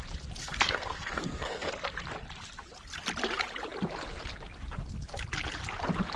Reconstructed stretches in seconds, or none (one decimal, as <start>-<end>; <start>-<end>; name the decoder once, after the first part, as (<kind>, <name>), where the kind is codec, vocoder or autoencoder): 0.4-1.7 (codec, SNAC)